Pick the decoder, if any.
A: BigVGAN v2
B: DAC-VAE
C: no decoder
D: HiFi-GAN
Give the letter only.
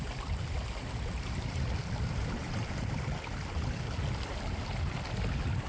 C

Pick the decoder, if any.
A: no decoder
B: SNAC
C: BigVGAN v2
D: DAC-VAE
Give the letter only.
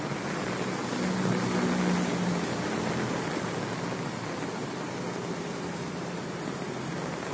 A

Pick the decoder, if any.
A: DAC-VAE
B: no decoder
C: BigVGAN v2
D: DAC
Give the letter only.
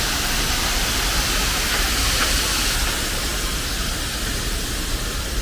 B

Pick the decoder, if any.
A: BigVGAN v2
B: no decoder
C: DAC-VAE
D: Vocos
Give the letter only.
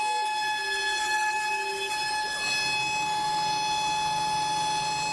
B